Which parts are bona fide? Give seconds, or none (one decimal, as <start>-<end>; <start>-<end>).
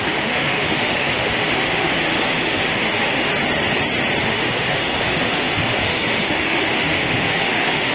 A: 3.3-4.2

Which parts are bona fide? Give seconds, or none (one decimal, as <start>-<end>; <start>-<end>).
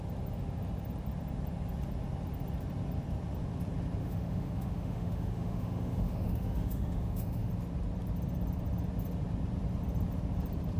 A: 0.0-4.0; 7.5-10.8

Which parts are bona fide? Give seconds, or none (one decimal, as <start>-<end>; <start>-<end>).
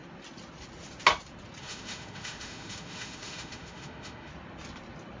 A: 0.0-1.6; 4.3-5.2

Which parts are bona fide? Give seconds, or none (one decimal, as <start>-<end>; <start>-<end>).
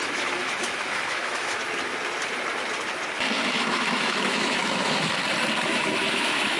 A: 1.6-3.5; 5.1-5.6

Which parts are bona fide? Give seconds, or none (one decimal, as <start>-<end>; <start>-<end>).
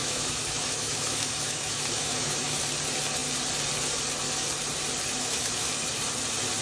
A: 2.6-5.1; 5.7-6.6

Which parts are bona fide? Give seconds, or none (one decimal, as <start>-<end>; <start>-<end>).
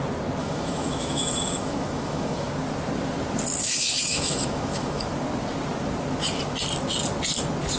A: 0.0-0.4; 2.5-3.6; 5.0-7.8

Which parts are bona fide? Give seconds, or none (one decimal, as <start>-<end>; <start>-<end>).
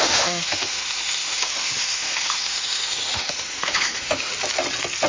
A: 4.3-5.1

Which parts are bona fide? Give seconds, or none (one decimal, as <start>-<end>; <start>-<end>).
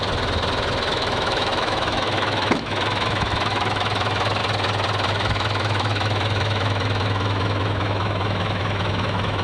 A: 0.0-0.9; 4.4-5.1